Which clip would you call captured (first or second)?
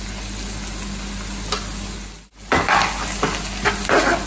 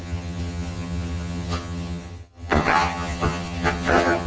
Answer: first